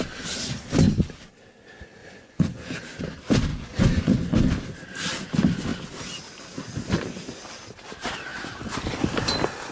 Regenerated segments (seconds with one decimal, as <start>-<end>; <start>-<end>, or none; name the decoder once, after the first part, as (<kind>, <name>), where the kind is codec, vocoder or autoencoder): 2.0-3.0 (vocoder, Vocos); 3.5-4.5